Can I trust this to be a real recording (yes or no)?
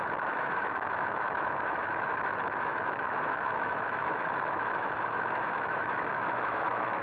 no